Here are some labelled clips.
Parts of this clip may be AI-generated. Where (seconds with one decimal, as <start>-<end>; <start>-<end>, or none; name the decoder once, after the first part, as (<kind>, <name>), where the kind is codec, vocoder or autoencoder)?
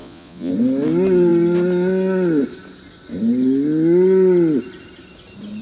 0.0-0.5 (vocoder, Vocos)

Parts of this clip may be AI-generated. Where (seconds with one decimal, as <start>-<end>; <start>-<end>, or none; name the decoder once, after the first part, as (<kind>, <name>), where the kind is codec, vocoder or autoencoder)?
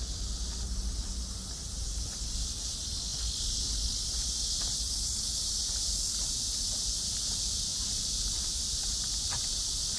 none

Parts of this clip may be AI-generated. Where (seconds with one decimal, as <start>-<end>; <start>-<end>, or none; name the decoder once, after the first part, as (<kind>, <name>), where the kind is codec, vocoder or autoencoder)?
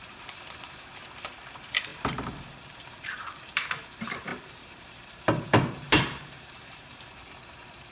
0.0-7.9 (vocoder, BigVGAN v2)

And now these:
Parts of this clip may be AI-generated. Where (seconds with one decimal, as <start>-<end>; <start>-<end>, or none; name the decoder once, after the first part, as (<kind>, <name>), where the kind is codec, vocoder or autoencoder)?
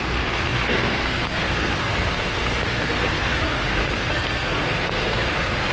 0.0-5.7 (codec, SNAC)